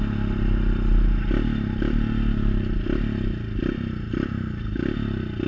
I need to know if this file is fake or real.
real